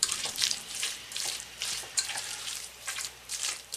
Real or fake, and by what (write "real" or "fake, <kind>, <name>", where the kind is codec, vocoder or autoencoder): fake, vocoder, BigVGAN v2